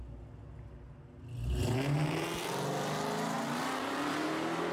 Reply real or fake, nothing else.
real